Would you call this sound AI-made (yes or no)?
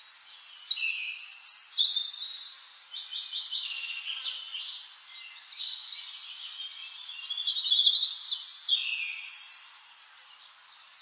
no